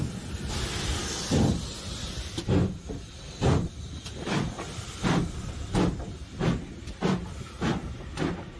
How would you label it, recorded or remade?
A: recorded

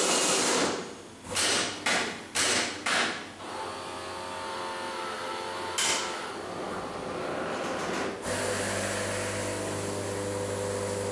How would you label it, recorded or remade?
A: recorded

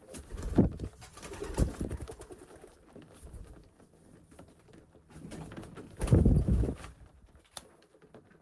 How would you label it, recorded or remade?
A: recorded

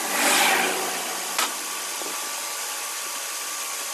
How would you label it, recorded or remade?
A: recorded